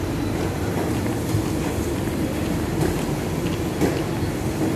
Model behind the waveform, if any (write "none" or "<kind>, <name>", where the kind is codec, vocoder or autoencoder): none